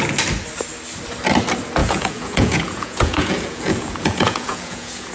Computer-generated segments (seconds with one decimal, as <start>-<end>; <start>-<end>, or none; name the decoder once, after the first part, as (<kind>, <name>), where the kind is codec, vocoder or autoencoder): 1.8-5.1 (vocoder, Vocos)